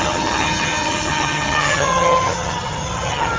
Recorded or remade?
remade